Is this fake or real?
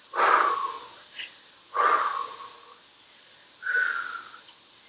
real